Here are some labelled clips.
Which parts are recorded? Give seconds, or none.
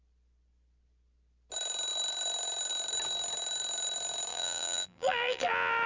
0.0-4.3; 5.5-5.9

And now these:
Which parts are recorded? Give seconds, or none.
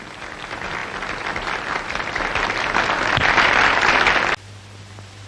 0.0-0.8; 4.0-5.3